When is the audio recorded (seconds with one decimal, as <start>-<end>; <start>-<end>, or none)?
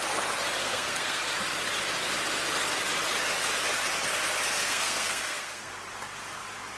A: 0.0-0.6; 1.2-4.6; 5.7-6.8